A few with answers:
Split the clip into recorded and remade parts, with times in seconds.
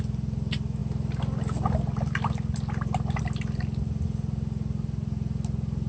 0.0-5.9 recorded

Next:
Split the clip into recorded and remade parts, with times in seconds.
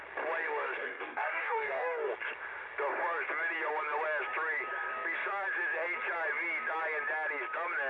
0.0-0.8 recorded; 0.8-2.1 remade; 2.1-7.9 recorded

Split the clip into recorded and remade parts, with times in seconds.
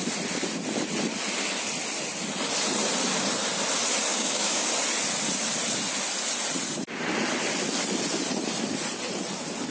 0.0-4.1 recorded; 4.1-4.7 remade; 4.7-9.7 recorded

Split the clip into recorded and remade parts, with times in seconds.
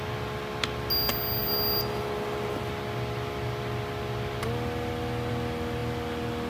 0.0-6.5 recorded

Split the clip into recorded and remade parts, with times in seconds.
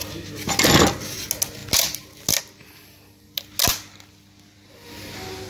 0.0-5.5 recorded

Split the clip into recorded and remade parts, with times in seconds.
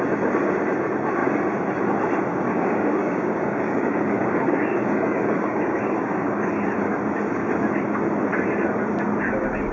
0.0-2.3 recorded; 2.3-6.5 remade; 6.5-9.7 recorded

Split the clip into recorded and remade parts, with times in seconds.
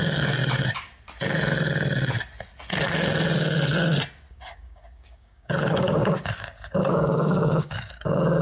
0.0-0.4 remade; 0.4-4.3 recorded; 4.3-8.4 remade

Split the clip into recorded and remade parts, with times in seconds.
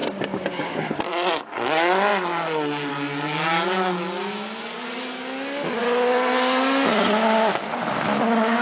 0.0-1.0 remade; 1.0-8.6 recorded